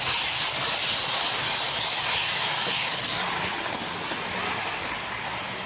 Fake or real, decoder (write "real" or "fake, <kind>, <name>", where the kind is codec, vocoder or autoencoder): real